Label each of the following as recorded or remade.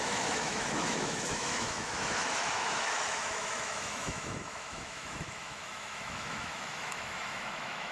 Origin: remade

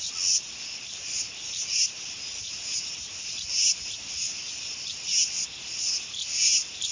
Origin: recorded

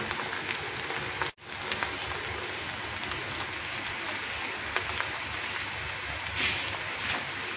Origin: recorded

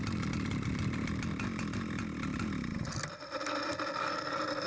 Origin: recorded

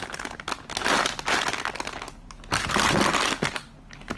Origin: recorded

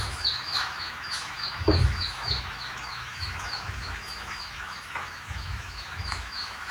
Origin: remade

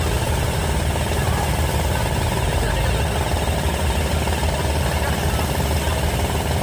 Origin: recorded